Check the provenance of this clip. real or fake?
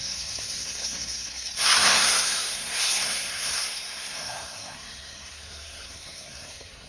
fake